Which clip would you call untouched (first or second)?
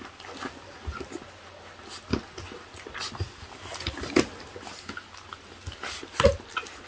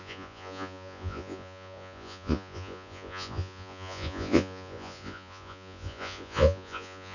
first